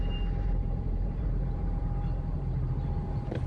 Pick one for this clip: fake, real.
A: fake